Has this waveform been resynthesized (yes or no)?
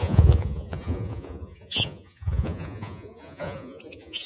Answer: yes